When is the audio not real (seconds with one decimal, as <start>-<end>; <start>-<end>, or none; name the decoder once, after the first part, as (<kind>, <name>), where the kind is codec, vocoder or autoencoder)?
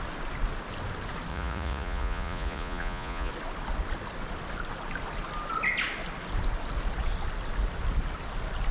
1.3-3.3 (vocoder, Vocos)